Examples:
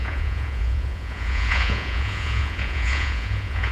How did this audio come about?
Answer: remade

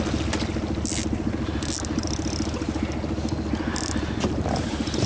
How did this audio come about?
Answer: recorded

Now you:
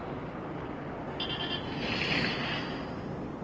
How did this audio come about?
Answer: recorded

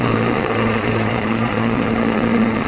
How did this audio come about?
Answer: remade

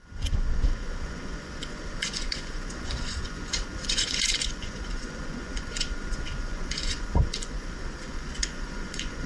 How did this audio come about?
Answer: remade